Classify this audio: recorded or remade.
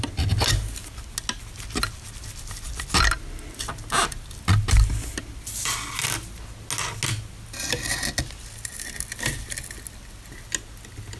recorded